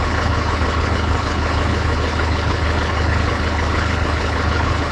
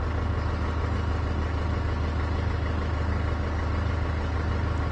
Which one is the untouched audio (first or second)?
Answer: second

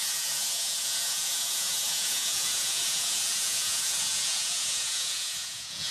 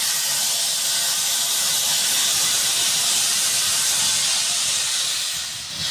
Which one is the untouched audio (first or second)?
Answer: second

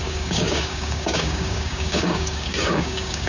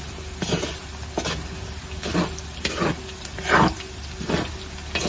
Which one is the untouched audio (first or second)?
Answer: second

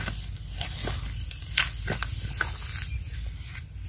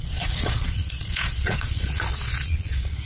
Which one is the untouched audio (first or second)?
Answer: first